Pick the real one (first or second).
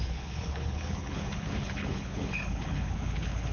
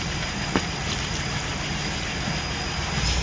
second